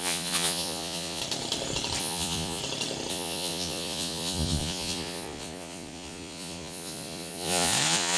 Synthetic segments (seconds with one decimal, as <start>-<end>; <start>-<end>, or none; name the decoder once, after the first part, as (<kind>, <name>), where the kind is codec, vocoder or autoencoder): 0.0-1.2 (vocoder, Vocos); 2.0-2.6; 3.1-8.2